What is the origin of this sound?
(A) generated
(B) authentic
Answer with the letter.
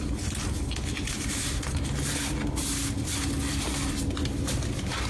B